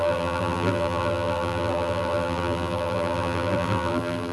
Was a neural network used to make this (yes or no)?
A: yes